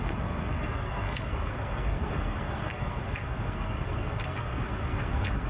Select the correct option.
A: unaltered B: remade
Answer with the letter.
B